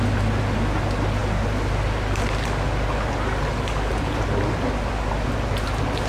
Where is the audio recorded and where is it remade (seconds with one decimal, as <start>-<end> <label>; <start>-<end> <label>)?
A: 0.0-6.1 recorded